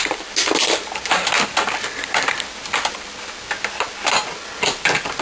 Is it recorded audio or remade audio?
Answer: recorded